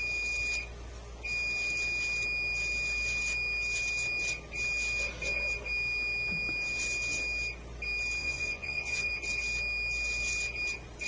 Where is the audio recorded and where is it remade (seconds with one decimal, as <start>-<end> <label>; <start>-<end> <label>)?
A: 0.0-8.2 recorded; 8.2-9.1 remade; 9.1-11.1 recorded

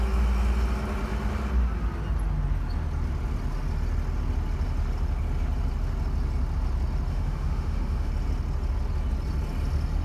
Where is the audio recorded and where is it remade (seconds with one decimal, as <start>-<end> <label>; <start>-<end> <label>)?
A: 0.0-7.1 recorded; 7.1-8.1 remade; 8.1-10.0 recorded

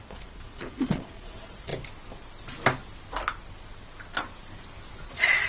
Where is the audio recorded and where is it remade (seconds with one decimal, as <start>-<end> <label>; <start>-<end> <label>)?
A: 0.0-1.7 remade; 1.7-5.0 recorded; 5.0-5.5 remade